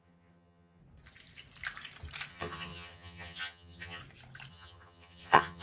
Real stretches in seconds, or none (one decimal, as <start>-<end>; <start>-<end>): 0.8-2.3; 4.0-4.5